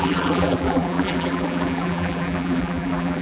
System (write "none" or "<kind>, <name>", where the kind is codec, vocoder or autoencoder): vocoder, BigVGAN v2